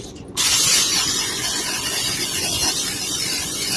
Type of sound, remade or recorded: remade